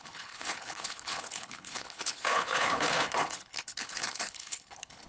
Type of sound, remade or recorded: remade